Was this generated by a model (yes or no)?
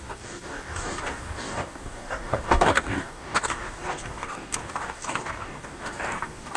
yes